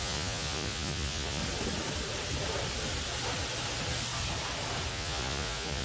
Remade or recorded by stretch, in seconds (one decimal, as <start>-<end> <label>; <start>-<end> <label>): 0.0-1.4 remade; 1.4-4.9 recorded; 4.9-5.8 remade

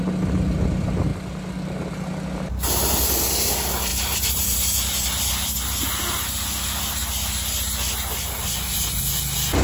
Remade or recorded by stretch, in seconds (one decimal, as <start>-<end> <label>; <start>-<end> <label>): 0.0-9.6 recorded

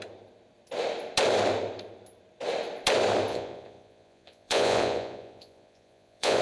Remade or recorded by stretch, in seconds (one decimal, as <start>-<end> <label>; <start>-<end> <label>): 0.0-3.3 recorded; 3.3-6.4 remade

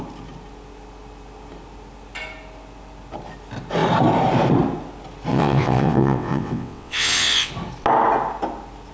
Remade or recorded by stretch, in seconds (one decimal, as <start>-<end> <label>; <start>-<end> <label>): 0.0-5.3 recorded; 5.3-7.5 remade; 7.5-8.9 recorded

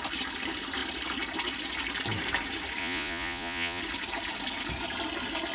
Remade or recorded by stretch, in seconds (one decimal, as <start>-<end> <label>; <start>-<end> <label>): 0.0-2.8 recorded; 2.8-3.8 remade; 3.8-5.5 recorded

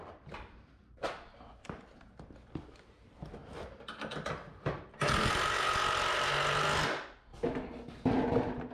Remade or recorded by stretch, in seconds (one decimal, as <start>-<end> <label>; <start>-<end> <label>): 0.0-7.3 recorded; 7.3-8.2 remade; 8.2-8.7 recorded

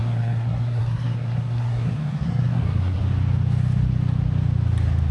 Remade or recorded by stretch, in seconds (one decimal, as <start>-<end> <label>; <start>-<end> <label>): 0.0-3.0 remade; 3.0-5.1 recorded